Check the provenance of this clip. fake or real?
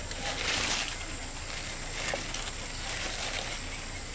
real